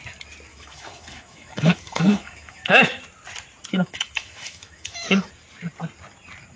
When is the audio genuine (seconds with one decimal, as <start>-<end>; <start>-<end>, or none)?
0.0-0.5; 3.0-3.7; 5.3-6.6